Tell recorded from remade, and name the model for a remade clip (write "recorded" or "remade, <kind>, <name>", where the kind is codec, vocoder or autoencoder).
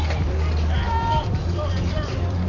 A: remade, vocoder, BigVGAN v2